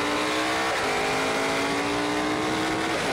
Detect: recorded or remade recorded